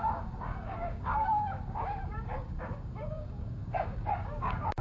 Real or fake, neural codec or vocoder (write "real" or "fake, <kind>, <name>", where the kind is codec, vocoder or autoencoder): fake, codec, DAC